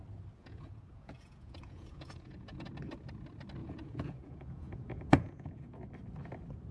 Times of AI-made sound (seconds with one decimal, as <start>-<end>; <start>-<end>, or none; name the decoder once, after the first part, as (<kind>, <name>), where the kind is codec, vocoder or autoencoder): 0.4-2.7 (vocoder, Vocos); 3.6-5.8